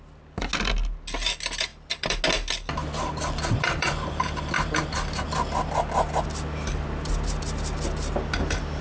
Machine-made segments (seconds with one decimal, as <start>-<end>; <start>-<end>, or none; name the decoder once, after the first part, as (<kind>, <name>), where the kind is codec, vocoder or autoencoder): 1.7-2.2 (vocoder, BigVGAN v2); 2.8-4.8